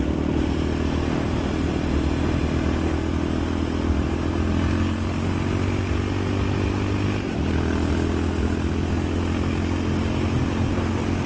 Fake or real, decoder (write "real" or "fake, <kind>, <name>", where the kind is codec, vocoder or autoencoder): real